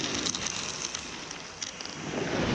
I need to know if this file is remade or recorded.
recorded